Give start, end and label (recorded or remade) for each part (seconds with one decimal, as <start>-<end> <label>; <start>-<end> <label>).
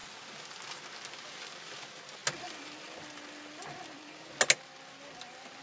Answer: 0.0-5.6 recorded